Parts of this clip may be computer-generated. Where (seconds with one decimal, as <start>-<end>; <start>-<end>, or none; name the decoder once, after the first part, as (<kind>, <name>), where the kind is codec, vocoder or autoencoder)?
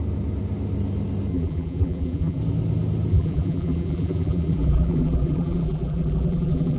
1.3-2.4 (vocoder, BigVGAN v2); 3.1-6.8